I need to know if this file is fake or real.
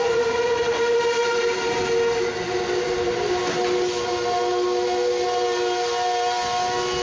real